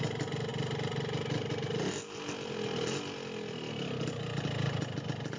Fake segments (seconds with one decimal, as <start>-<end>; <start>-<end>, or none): none